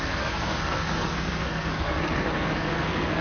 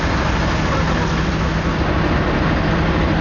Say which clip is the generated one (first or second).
first